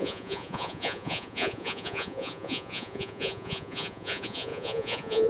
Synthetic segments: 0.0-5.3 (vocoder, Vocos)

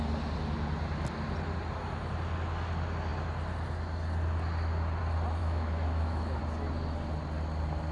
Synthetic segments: 5.4-6.4 (autoencoder, DAC-VAE)

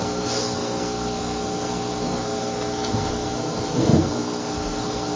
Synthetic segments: 0.0-5.2 (codec, SNAC)

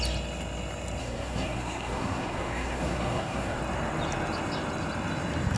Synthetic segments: 1.0-3.6 (codec, SNAC)

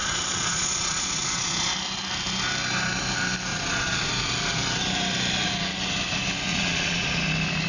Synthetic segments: 0.0-1.7 (vocoder, Vocos); 3.5-4.1; 6.5-7.2

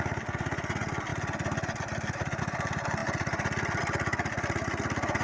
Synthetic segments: none

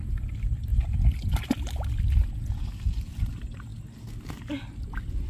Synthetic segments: none

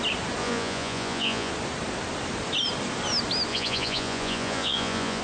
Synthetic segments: 0.4-1.5 (vocoder, Vocos); 3.5-5.2